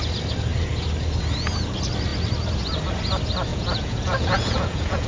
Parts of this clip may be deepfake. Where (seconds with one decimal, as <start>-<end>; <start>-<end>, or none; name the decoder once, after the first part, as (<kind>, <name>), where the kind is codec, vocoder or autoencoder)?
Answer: 3.5-5.1 (vocoder, Vocos)